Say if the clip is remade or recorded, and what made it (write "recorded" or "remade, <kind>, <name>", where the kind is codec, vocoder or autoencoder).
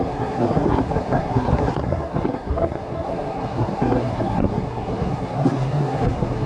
remade, codec, SNAC